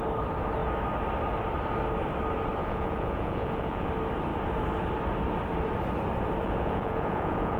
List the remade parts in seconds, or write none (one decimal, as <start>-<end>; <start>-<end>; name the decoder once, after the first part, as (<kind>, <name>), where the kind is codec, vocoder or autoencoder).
2.6-3.9 (vocoder, Vocos); 6.4-7.6